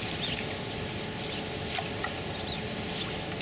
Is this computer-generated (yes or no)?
no